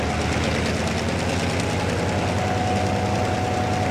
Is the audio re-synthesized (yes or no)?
no